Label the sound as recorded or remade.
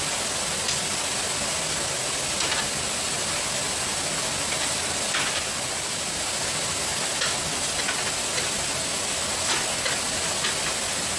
recorded